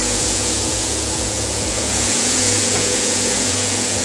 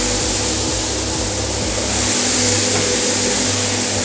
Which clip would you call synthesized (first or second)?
first